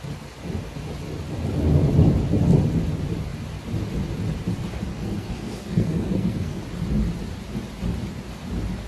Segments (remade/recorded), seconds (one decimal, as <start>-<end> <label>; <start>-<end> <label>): 0.0-4.9 recorded; 4.9-6.6 remade; 6.6-8.9 recorded